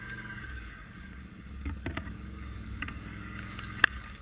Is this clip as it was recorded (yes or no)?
no